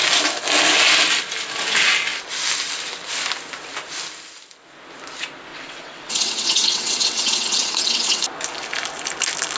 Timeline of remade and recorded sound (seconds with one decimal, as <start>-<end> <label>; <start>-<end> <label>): 0.0-5.5 recorded; 5.5-8.2 remade; 8.2-9.6 recorded